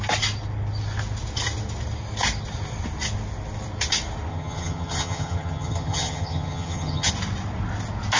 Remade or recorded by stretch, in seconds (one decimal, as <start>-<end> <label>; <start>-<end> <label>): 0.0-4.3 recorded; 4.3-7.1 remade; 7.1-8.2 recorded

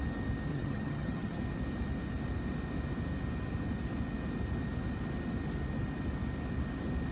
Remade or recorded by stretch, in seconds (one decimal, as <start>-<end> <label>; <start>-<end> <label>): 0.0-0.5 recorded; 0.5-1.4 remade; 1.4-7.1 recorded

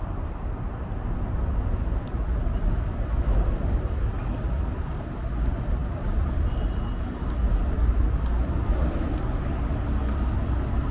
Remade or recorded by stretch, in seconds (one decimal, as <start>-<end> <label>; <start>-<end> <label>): 0.0-10.9 recorded